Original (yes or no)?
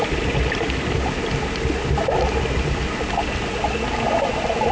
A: yes